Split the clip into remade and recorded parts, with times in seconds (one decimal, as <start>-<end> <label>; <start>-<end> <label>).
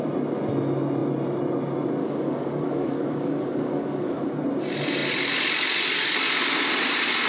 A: 0.0-2.0 recorded; 2.0-4.3 remade; 4.3-7.3 recorded